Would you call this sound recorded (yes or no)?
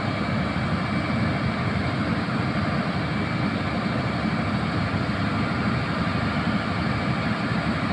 yes